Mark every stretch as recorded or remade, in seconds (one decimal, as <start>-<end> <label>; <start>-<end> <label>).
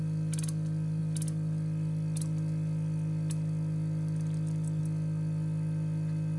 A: 0.0-6.4 recorded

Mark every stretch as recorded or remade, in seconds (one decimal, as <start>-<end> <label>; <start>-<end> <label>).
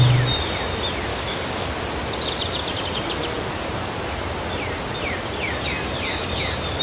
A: 0.0-1.1 recorded; 1.1-1.7 remade; 1.7-6.8 recorded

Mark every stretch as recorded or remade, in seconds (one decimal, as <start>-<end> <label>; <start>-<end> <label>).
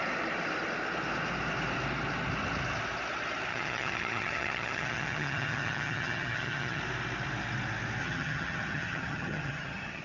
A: 0.0-3.5 recorded; 3.5-6.8 remade; 6.8-8.0 recorded; 8.0-10.0 remade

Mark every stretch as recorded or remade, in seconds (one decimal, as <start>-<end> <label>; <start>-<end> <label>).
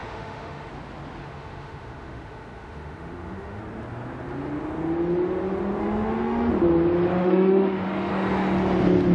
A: 0.0-0.7 remade; 0.7-1.2 recorded; 1.2-3.6 remade; 3.6-5.8 recorded; 5.8-6.5 remade; 6.5-7.2 recorded; 7.2-8.1 remade; 8.1-9.1 recorded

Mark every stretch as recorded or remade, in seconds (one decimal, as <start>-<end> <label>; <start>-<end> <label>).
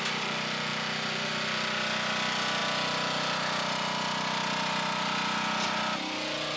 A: 0.0-6.6 recorded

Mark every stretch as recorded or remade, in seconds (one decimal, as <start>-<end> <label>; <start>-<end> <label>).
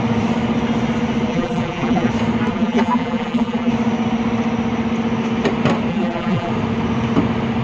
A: 0.0-1.3 recorded; 1.3-2.1 remade; 2.1-2.5 recorded; 2.5-3.7 remade; 3.7-5.9 recorded; 5.9-6.5 remade; 6.5-7.6 recorded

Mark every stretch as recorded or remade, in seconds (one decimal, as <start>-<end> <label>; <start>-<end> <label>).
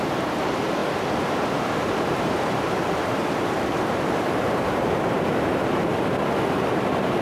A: 0.0-5.9 remade; 5.9-6.4 recorded; 6.4-7.2 remade